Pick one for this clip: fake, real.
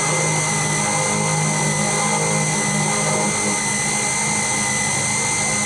real